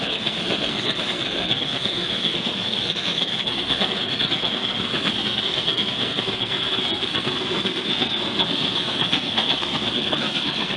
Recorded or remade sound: remade